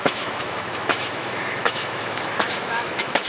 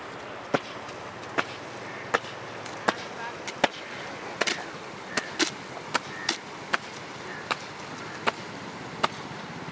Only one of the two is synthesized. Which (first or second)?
first